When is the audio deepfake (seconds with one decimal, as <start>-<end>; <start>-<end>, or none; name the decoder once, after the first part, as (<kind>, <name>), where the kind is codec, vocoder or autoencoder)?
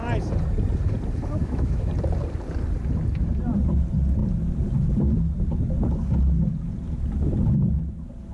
1.4-1.9 (autoencoder, DAC-VAE)